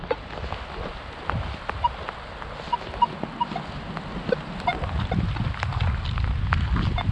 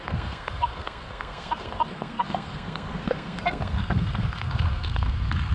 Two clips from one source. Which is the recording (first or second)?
first